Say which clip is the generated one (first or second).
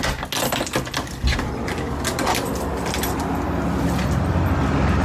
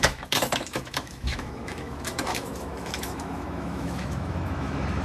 second